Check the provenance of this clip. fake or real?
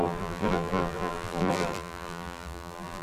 fake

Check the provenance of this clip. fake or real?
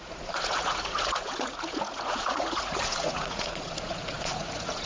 fake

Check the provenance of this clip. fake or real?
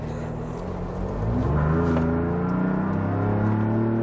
real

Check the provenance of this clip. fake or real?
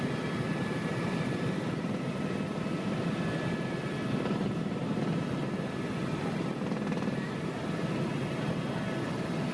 real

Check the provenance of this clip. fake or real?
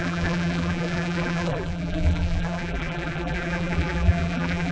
fake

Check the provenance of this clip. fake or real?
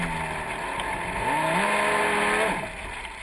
real